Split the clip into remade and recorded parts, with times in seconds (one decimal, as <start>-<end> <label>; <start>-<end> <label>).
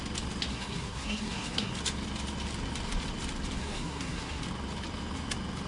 0.0-0.5 recorded; 0.5-1.7 remade; 1.7-3.6 recorded; 3.6-4.4 remade; 4.4-5.7 recorded